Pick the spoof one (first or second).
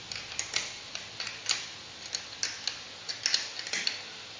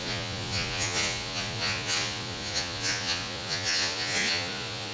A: second